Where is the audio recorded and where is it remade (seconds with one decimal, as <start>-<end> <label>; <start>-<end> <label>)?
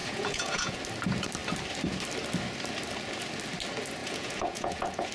0.0-0.8 remade; 0.8-4.0 recorded; 4.0-5.1 remade